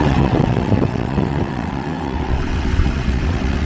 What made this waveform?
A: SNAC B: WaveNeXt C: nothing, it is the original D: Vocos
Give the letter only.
B